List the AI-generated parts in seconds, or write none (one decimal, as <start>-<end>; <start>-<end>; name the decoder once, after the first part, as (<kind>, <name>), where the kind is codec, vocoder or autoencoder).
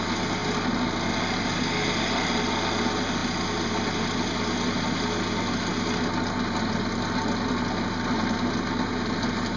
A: none